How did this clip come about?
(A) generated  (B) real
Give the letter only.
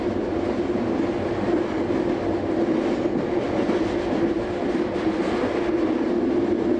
B